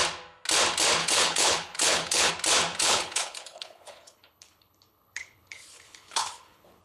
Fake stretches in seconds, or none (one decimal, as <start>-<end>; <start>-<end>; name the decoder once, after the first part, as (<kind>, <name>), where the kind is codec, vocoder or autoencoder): 1.0-2.3 (codec, HILCodec); 2.7-6.8